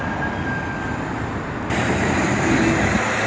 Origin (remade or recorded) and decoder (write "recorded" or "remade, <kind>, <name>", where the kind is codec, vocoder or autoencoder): recorded